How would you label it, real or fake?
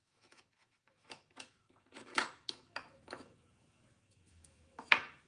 fake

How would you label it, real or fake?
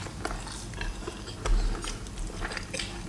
real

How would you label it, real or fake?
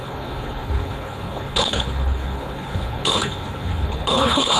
fake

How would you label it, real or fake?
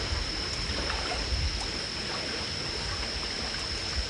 real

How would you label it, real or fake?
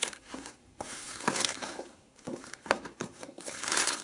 fake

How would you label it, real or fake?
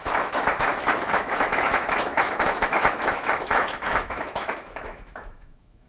fake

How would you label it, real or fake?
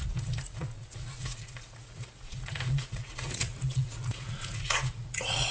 fake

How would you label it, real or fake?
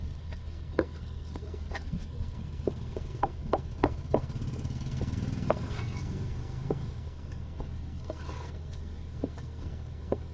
fake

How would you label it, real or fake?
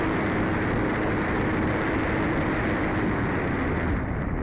real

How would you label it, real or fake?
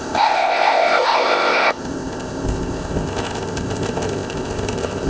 fake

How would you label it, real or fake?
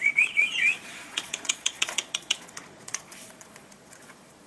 fake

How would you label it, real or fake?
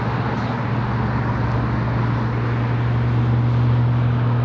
real